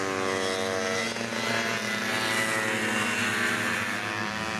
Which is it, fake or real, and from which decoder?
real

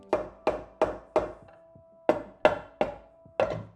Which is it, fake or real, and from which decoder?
real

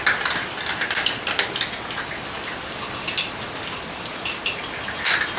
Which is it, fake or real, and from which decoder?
real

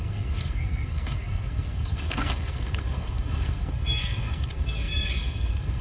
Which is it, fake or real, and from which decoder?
fake, codec, SNAC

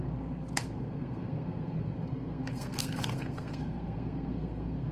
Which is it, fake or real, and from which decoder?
fake, codec, SNAC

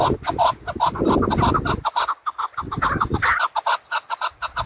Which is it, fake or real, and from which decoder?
real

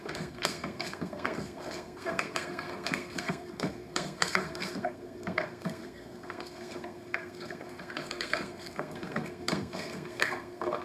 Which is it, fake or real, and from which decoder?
fake, codec, SNAC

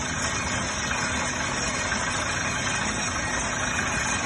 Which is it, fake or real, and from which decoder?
real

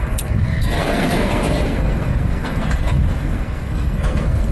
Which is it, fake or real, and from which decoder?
fake, codec, SNAC